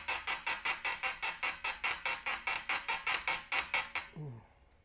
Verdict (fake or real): real